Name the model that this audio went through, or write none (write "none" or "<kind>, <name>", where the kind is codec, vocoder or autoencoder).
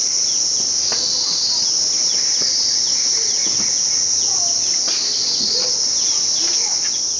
none